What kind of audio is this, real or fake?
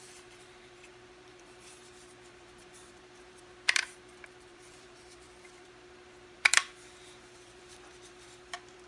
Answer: fake